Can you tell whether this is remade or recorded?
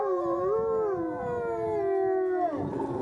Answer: recorded